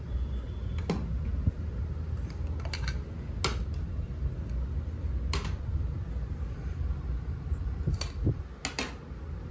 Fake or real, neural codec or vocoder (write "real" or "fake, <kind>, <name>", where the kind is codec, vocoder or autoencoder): real